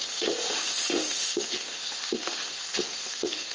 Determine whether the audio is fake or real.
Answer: fake